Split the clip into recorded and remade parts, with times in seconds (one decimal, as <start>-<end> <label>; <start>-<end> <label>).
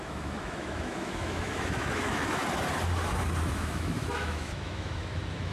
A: 0.0-2.4 remade; 2.4-3.5 recorded; 3.5-5.5 remade